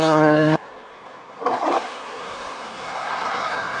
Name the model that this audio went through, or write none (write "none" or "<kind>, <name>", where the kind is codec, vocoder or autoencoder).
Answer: codec, SNAC